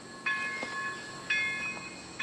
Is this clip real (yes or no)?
yes